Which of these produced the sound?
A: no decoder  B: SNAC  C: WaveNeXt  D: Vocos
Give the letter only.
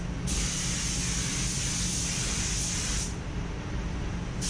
A